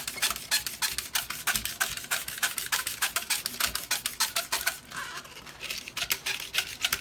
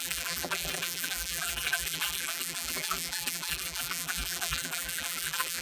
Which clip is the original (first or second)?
first